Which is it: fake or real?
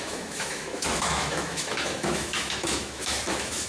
fake